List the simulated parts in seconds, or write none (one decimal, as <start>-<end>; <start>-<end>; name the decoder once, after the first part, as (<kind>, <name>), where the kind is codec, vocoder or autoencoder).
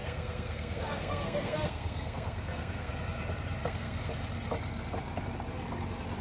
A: 0.0-2.9 (codec, SNAC); 3.6-4.1